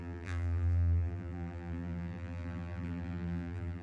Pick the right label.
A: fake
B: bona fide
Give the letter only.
A